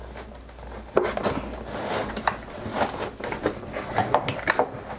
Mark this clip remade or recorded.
recorded